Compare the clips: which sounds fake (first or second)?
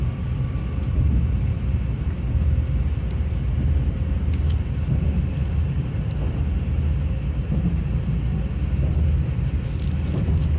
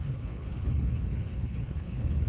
second